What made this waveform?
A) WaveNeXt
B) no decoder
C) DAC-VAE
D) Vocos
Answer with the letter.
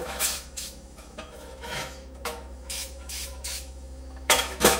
C